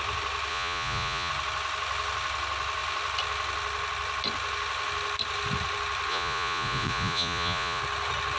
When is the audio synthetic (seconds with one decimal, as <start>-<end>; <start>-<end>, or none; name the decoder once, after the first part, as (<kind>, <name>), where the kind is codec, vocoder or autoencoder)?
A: 0.5-1.3 (vocoder, Vocos); 6.1-7.8